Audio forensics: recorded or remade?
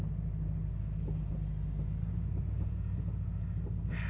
recorded